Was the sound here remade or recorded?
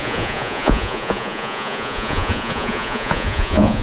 remade